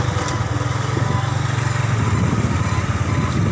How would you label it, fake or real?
real